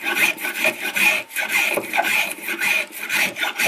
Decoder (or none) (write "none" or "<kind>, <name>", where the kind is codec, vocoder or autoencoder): vocoder, BigVGAN v2